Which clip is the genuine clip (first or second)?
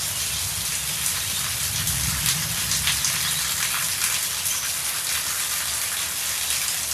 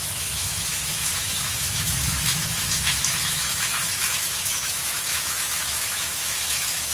first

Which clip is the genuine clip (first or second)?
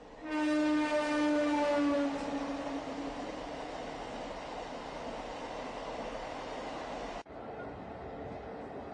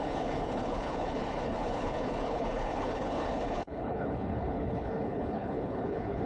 first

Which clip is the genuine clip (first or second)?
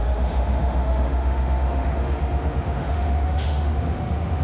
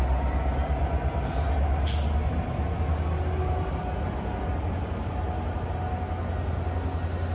second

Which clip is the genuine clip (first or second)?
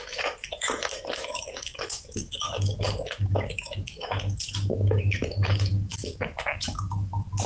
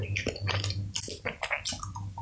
second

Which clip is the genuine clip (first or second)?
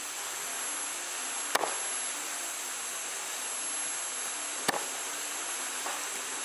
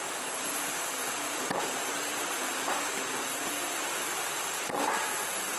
first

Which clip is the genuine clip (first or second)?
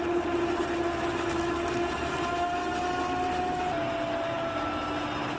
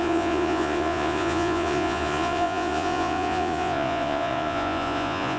first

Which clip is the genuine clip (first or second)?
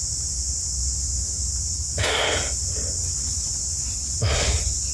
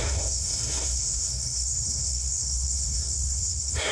first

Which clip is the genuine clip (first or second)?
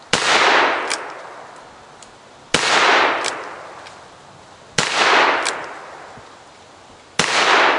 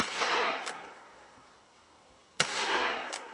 first